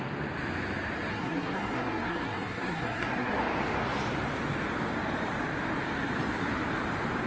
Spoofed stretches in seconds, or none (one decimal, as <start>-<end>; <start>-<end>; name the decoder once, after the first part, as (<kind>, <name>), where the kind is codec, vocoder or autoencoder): 1.1-3.4 (codec, SNAC)